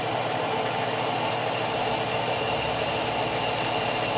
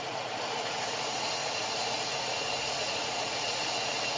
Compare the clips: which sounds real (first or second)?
first